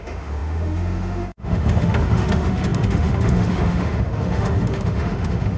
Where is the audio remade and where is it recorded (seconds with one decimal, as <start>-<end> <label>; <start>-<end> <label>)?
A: 0.0-5.6 remade